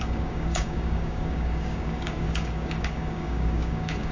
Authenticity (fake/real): fake